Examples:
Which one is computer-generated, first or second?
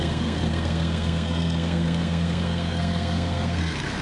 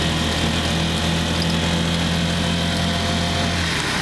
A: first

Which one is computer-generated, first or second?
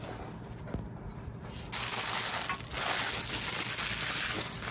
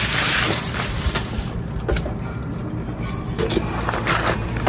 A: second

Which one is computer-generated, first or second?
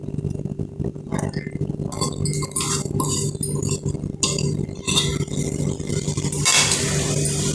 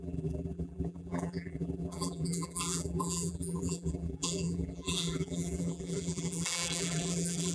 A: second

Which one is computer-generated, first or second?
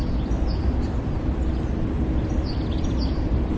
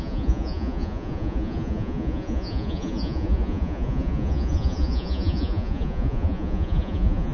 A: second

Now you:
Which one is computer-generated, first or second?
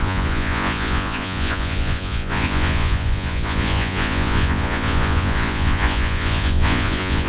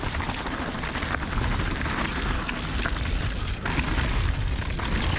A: first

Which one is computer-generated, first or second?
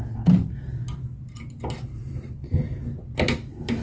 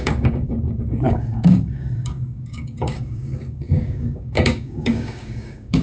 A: second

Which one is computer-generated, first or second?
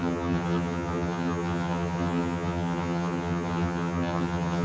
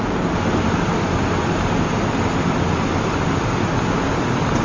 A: first